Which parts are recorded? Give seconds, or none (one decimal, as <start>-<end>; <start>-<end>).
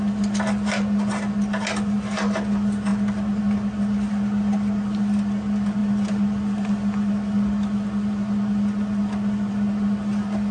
0.0-10.5